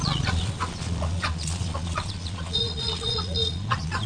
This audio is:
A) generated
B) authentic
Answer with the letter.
A